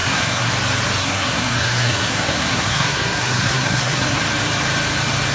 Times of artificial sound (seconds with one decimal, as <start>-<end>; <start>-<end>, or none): 0.0-0.5; 1.0-4.2